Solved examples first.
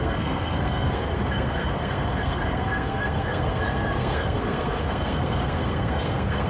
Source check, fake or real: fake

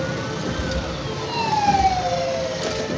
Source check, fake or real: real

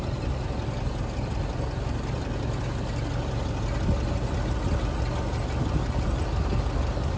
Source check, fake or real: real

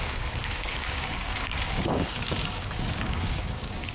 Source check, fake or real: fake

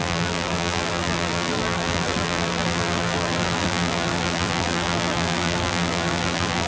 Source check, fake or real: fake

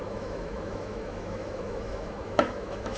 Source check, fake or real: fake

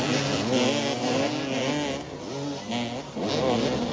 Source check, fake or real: real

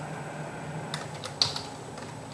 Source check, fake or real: real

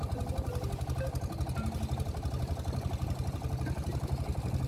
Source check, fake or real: real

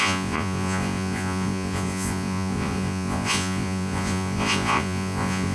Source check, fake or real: fake